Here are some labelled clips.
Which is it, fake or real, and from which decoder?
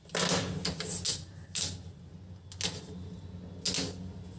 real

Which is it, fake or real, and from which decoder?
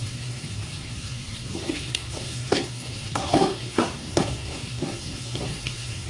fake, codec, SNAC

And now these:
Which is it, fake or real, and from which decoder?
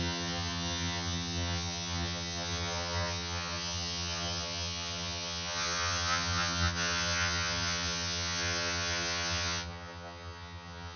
fake, vocoder, HiFi-GAN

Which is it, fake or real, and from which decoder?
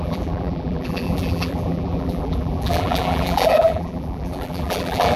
fake, vocoder, BigVGAN v2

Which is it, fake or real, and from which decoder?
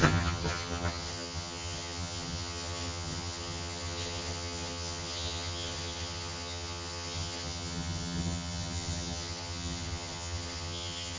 fake, vocoder, HiFi-GAN